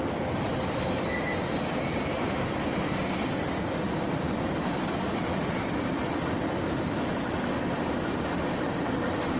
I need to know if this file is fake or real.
fake